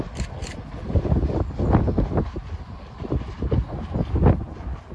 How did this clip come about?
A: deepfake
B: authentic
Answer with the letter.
B